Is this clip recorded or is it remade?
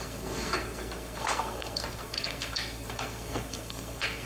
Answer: remade